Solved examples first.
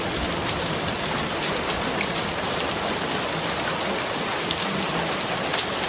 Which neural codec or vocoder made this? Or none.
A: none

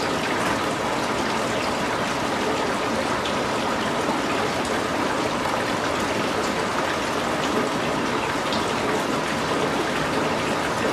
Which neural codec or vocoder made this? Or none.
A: none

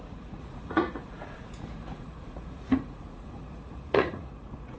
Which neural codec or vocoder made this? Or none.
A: vocoder, Vocos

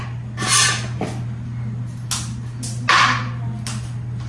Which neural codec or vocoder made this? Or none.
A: none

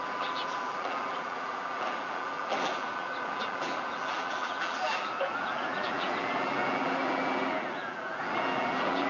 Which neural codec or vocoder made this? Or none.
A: vocoder, BigVGAN v2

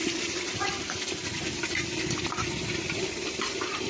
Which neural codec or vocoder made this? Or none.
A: none